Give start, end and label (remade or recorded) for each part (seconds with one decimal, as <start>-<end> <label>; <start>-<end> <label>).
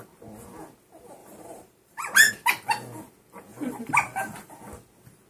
0.0-1.2 recorded; 1.2-2.3 remade; 2.3-3.5 recorded; 3.5-4.3 remade; 4.3-5.3 recorded